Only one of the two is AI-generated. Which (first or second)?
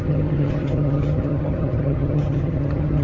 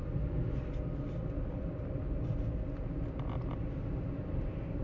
first